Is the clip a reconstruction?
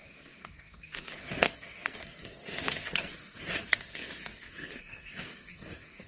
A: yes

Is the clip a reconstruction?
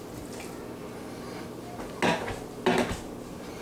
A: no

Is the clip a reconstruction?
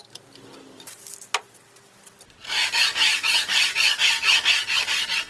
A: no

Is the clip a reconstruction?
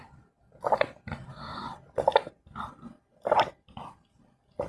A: no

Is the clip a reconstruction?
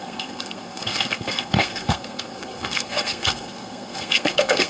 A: yes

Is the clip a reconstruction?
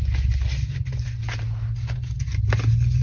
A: no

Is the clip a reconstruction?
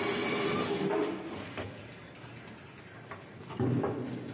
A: no